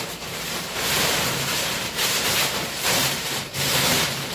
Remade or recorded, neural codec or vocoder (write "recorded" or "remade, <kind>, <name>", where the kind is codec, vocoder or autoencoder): remade, vocoder, BigVGAN v2